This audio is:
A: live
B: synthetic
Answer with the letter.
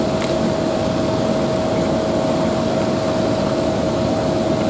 A